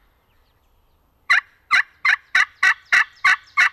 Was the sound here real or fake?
fake